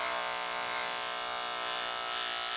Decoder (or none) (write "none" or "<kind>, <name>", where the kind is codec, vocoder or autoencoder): none